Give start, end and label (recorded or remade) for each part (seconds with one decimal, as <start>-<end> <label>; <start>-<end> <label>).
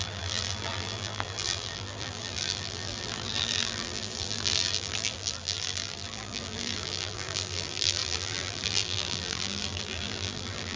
0.0-10.8 remade